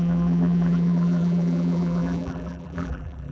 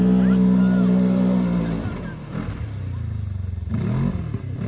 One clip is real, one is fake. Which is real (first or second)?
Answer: second